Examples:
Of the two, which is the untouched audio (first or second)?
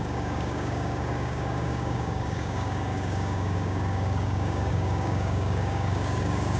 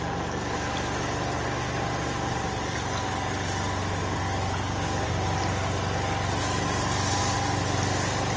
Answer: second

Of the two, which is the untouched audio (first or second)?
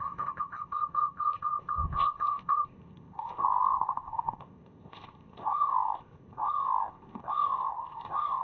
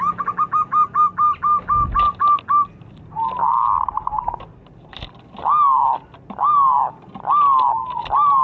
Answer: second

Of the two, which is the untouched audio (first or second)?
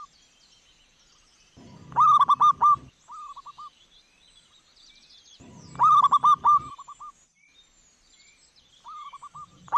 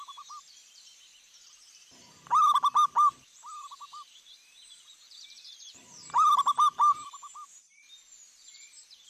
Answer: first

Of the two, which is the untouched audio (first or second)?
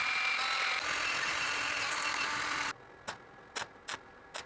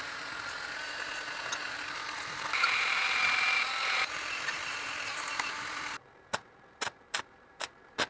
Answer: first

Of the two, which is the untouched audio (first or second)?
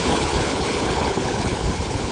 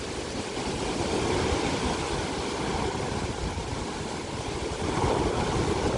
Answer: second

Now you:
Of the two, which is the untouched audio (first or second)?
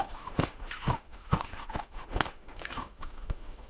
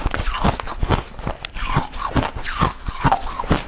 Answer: second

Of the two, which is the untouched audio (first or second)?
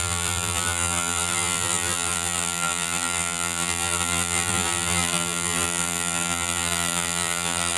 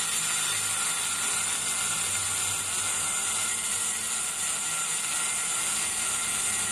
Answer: second